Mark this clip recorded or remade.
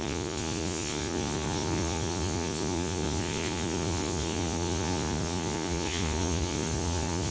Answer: remade